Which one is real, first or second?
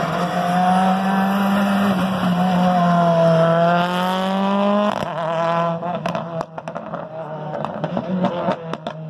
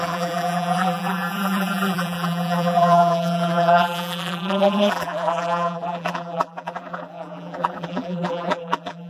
first